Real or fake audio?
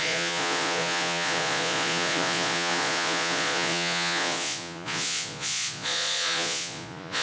fake